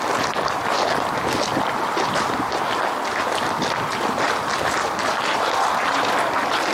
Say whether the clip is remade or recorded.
recorded